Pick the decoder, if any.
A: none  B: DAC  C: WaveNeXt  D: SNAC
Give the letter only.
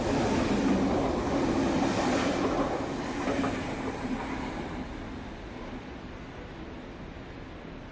A